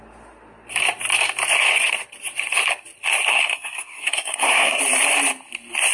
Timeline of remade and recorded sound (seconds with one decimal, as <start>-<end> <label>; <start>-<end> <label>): 0.0-3.3 recorded; 3.3-4.8 remade; 4.8-5.9 recorded